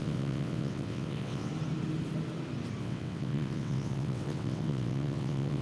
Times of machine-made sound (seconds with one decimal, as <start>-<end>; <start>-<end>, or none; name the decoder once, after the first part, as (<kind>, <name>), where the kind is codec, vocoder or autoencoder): 0.0-1.5 (vocoder, WaveNeXt); 2.8-5.6